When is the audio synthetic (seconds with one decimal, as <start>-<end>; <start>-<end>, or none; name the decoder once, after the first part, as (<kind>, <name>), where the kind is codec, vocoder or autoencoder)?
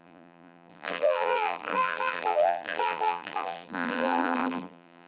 0.0-5.1 (vocoder, BigVGAN v2)